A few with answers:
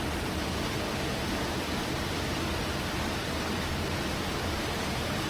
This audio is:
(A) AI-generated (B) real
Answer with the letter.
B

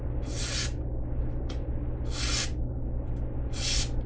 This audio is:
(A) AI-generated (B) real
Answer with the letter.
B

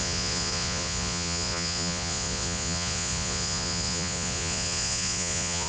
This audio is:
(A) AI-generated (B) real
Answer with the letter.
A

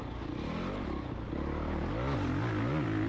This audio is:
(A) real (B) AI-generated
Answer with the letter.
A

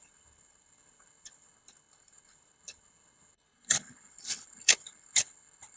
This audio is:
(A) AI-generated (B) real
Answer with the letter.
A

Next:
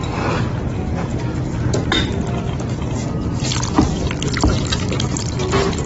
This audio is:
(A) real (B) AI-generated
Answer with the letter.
A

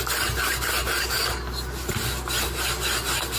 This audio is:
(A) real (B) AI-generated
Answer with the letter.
A